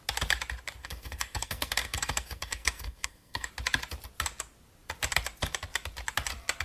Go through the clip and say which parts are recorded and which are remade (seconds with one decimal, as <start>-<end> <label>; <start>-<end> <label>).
0.0-0.8 recorded; 0.8-3.5 remade; 3.5-6.6 recorded